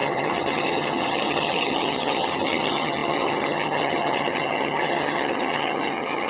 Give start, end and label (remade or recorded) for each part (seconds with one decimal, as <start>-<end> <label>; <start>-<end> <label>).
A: 0.0-6.3 remade

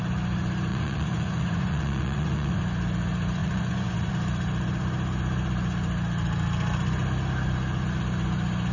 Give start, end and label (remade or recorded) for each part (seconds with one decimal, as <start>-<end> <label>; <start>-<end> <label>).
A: 0.0-0.7 recorded; 0.7-2.6 remade; 2.6-3.4 recorded; 3.4-4.1 remade; 4.1-8.7 recorded

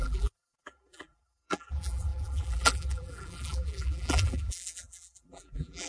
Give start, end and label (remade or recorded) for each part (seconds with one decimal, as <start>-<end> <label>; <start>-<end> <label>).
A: 0.0-5.9 remade

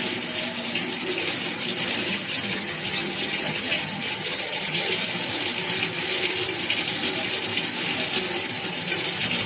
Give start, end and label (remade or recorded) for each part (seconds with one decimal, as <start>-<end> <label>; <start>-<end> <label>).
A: 0.0-2.1 recorded; 2.1-4.9 remade; 4.9-9.5 recorded

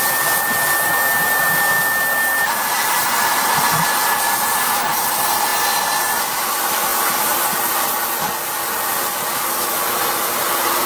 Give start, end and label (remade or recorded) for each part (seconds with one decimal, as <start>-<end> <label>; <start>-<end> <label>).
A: 0.0-10.9 recorded

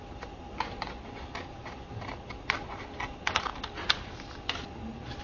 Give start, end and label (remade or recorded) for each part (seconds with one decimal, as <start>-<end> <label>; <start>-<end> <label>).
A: 0.0-5.2 recorded

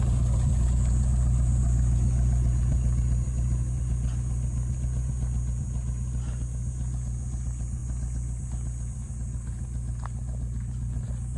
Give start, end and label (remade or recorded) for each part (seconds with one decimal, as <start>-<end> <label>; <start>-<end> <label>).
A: 0.0-11.4 recorded